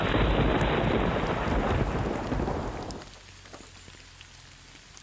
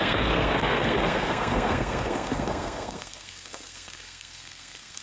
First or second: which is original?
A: first